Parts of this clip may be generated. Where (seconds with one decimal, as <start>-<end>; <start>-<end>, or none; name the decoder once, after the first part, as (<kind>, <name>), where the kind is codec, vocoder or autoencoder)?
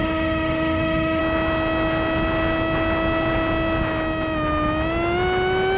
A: 0.0-1.2 (autoencoder, DAC-VAE)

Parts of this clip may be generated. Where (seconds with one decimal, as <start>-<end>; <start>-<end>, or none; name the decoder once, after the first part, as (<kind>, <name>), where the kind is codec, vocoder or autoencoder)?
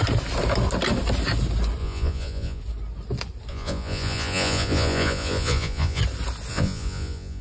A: 1.8-2.6 (vocoder, Vocos); 3.5-6.0; 6.5-7.4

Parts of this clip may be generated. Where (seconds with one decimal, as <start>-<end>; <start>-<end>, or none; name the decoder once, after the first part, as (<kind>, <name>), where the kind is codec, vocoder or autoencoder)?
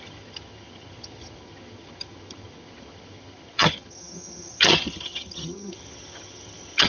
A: 0.0-6.9 (vocoder, HiFi-GAN)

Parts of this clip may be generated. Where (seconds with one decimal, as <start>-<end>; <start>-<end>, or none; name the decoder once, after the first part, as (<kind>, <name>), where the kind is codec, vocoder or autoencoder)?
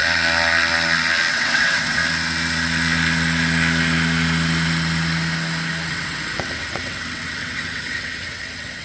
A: 1.3-2.0 (vocoder, WaveNeXt); 5.9-8.8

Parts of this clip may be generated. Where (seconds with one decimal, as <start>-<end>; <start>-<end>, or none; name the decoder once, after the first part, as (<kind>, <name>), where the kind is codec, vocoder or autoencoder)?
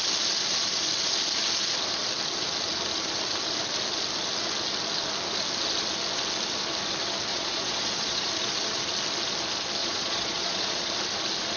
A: 7.3-8.3 (vocoder, Vocos); 9.8-10.9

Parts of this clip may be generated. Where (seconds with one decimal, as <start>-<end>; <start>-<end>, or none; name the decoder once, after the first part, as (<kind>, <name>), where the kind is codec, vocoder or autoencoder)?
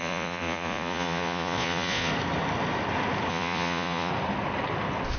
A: 0.0-2.1 (vocoder, Vocos); 3.3-4.1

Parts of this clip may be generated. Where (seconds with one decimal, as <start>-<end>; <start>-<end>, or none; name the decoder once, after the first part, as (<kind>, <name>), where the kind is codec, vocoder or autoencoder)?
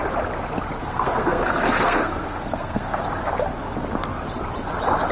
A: 0.8-3.0 (codec, SNAC)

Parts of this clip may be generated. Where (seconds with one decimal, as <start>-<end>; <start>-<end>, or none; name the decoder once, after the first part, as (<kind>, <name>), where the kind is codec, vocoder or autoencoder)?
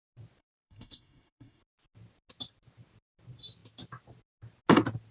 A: 0.4-1.6 (codec, SNAC)